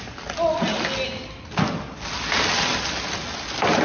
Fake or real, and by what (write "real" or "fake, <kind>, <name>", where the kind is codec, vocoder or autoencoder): real